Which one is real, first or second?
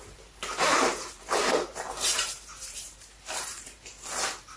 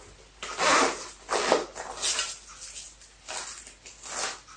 second